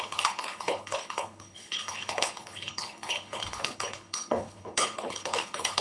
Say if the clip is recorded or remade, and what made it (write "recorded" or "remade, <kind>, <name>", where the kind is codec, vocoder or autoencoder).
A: remade, codec, HILCodec